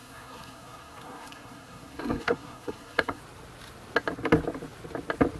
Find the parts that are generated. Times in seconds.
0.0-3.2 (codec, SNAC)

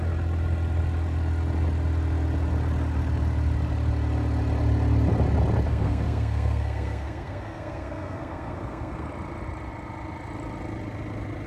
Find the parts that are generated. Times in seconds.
5.7-9.1 (codec, SNAC)